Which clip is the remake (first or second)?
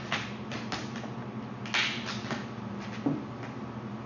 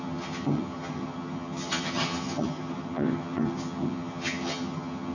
second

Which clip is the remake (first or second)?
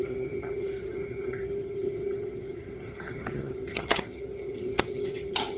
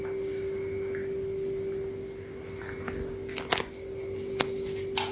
first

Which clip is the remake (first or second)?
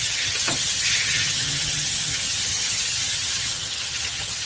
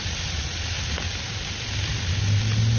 first